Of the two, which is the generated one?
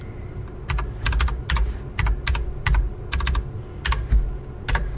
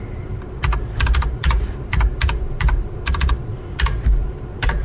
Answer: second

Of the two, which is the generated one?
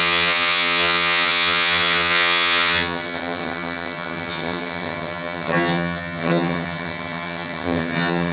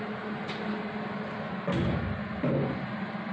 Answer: first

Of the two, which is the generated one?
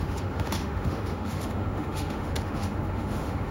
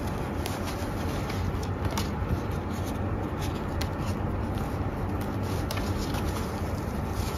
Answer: first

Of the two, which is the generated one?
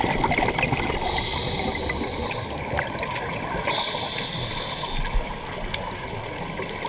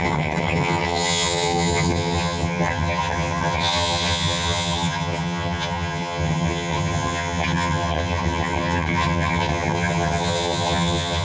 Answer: second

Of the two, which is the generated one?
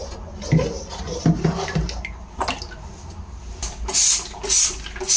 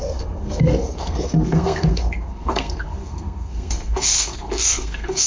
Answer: second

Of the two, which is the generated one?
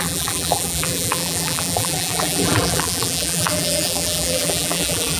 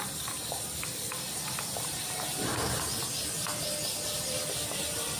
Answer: first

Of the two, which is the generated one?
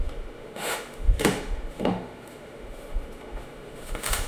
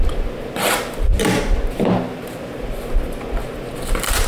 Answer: first